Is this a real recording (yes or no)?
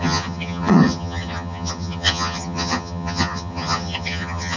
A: no